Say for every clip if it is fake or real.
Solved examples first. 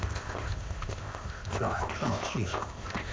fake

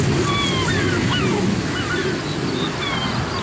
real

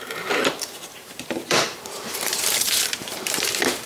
fake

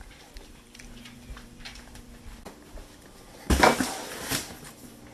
fake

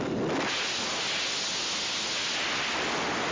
real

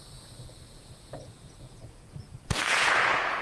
fake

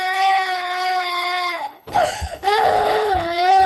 fake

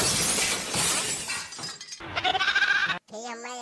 real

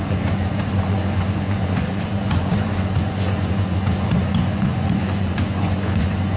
fake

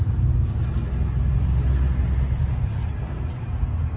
real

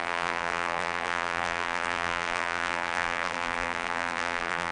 fake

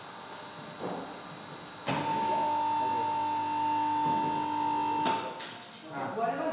real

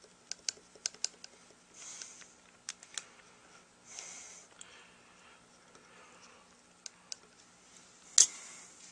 real